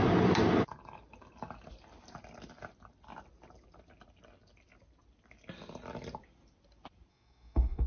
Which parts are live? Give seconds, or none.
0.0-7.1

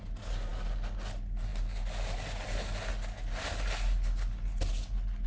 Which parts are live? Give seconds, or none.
0.0-5.3

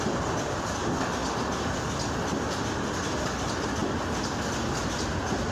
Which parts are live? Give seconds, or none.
0.0-5.5

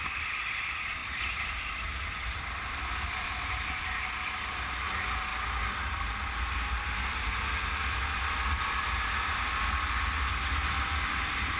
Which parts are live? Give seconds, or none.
0.0-11.6

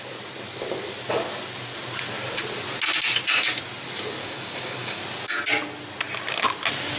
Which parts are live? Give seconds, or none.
0.0-4.2; 5.0-7.0

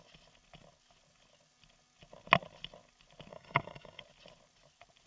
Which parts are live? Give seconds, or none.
0.0-3.3; 4.0-5.1

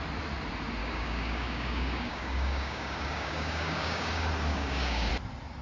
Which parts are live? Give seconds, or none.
0.0-0.8; 4.1-4.5; 5.1-5.6